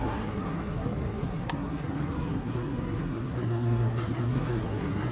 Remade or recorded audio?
remade